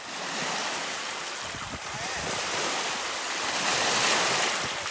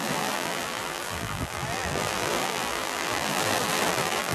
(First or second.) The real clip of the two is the first